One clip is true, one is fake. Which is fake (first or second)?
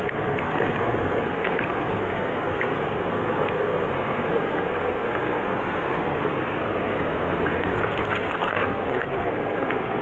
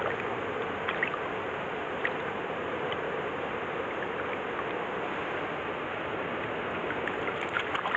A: first